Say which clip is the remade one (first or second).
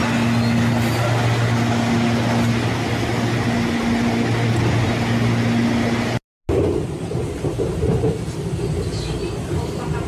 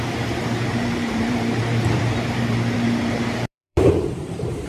second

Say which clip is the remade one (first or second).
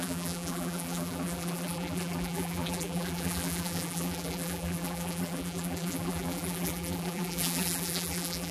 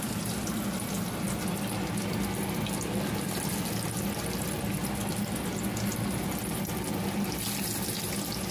first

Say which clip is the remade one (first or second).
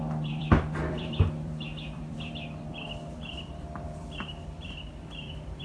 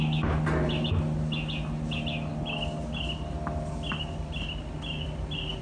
first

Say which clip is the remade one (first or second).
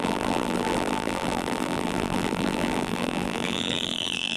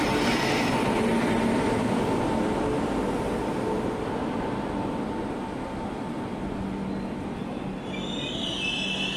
first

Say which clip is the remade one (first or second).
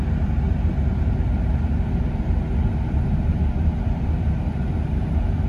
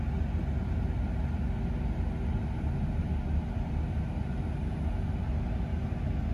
first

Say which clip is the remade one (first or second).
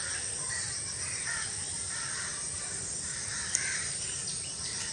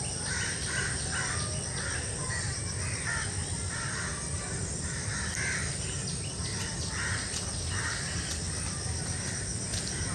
first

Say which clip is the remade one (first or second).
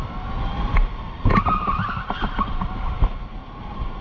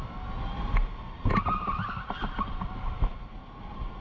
first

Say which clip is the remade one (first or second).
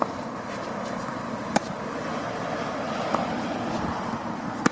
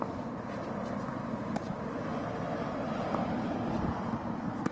first